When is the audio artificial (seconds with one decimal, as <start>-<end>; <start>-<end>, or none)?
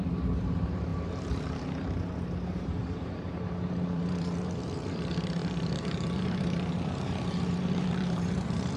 0.0-8.8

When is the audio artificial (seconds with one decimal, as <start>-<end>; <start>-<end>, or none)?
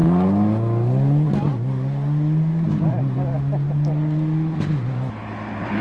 none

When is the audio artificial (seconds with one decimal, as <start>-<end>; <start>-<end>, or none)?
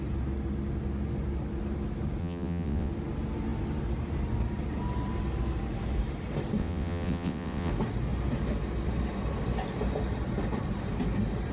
2.2-2.9; 6.6-7.7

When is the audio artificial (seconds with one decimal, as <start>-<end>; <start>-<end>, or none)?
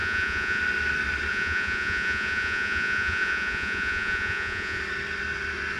0.0-0.6; 1.3-4.8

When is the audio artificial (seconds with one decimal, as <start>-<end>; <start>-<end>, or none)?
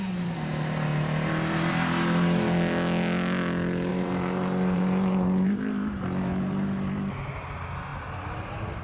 3.9-7.1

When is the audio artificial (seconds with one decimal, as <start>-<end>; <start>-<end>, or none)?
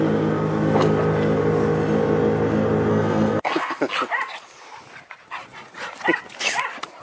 2.9-3.8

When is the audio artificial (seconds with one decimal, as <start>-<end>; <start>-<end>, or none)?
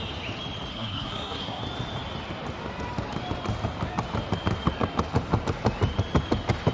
0.7-1.6